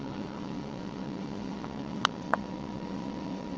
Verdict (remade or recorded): remade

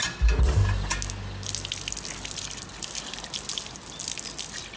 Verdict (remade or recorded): recorded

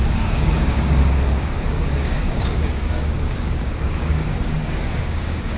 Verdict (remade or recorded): remade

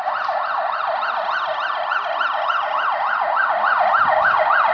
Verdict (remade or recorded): recorded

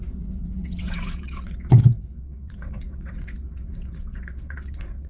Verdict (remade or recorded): remade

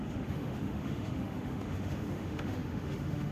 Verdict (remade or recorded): remade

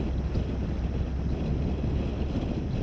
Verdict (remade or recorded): recorded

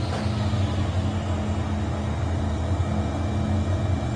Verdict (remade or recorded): recorded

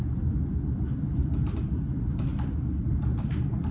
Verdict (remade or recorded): recorded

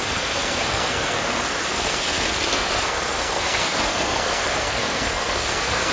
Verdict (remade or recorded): remade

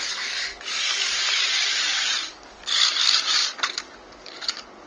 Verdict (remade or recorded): remade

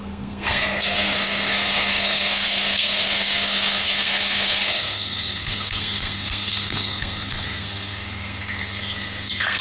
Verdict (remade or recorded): remade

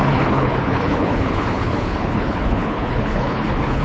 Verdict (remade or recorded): remade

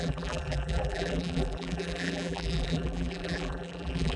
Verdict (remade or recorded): remade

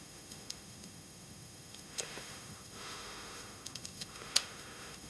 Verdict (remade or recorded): remade